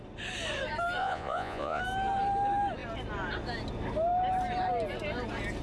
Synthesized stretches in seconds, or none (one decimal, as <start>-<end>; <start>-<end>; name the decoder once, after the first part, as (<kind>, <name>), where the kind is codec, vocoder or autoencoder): 1.0-1.8 (vocoder, Vocos)